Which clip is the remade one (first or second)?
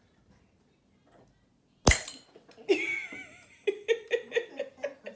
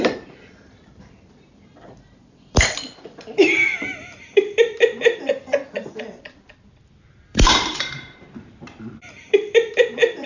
second